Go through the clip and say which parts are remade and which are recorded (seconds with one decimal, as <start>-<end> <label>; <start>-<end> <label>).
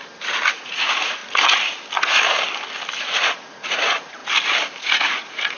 0.0-0.5 recorded; 0.5-1.2 remade; 1.2-3.0 recorded; 3.0-4.2 remade; 4.2-4.8 recorded; 4.8-5.6 remade